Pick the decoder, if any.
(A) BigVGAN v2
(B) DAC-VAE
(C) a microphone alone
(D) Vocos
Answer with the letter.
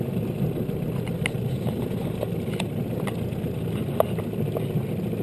C